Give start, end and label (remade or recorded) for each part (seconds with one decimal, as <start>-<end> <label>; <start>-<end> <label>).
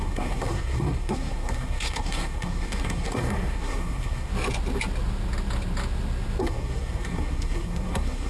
0.0-4.3 remade; 4.3-6.4 recorded; 6.4-8.3 remade